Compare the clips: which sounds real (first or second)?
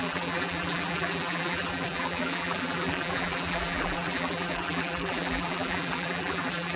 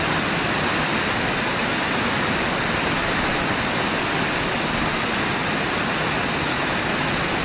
second